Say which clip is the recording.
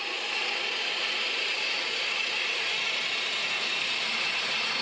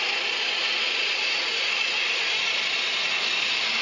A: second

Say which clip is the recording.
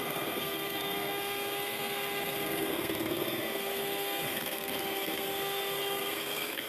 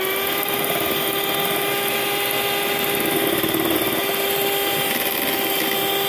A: second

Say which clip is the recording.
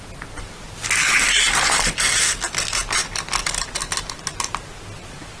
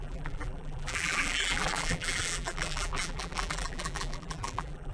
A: first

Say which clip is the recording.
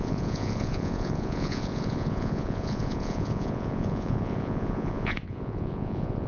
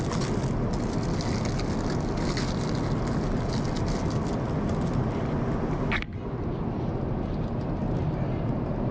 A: second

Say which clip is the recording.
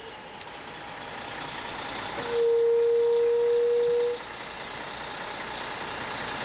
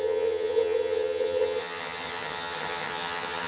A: first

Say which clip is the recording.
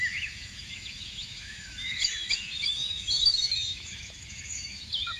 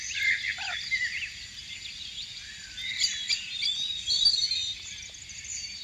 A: second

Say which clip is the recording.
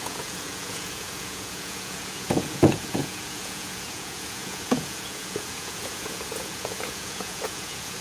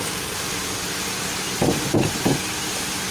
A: second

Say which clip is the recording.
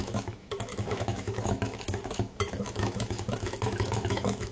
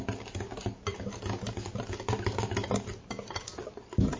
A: second